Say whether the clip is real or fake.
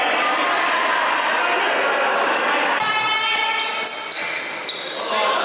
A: real